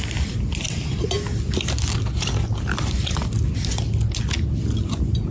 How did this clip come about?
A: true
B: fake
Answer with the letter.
A